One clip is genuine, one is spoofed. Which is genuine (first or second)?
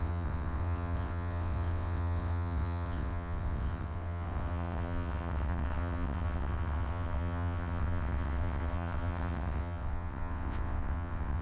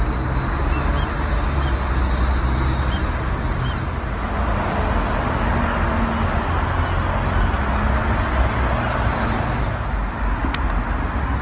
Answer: second